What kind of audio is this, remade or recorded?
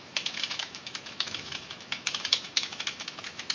remade